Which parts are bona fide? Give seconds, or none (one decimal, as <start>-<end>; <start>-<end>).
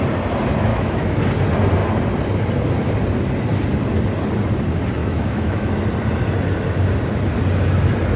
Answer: 0.0-0.7; 1.2-5.0; 5.7-8.2